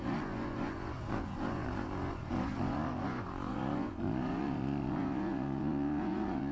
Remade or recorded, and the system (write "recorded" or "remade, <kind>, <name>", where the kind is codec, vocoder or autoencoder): remade, vocoder, Vocos